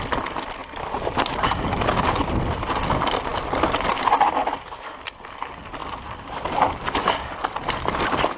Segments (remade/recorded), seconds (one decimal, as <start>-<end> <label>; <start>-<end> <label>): 0.0-8.4 recorded